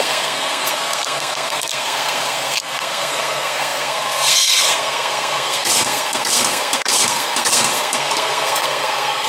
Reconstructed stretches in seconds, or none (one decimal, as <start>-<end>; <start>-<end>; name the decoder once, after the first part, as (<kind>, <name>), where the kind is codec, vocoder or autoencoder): 0.0-9.3 (codec, SNAC)